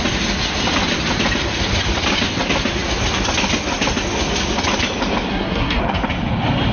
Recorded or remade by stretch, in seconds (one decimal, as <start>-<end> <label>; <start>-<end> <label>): 0.0-5.3 recorded; 5.3-5.8 remade; 5.8-6.7 recorded